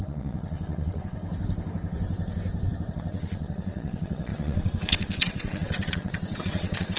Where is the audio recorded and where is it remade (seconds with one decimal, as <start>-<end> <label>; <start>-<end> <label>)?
0.0-1.2 remade; 1.2-2.9 recorded; 2.9-7.0 remade

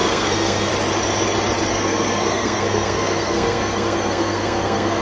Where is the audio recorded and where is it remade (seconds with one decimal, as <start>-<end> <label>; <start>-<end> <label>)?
0.0-0.7 remade; 0.7-1.7 recorded; 1.7-5.0 remade

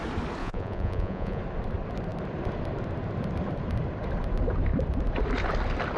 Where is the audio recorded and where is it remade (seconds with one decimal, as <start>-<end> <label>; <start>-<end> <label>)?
0.0-0.4 recorded; 0.4-1.4 remade; 1.4-6.0 recorded

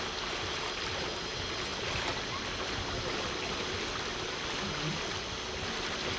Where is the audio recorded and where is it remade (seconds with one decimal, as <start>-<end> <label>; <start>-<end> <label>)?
0.0-6.2 recorded

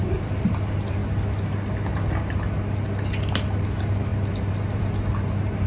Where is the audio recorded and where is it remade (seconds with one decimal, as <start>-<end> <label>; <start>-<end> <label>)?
0.0-5.7 recorded